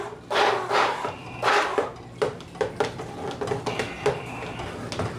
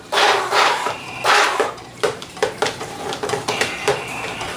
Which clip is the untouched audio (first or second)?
first